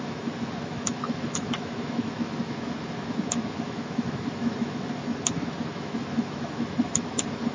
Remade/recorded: remade